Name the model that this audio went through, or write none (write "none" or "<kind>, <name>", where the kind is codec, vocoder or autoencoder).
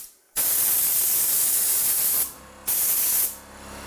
none